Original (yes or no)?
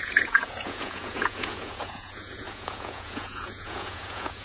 no